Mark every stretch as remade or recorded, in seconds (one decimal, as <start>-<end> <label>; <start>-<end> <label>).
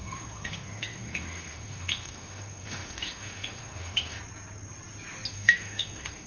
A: 0.0-4.2 remade; 4.2-5.3 recorded; 5.3-6.3 remade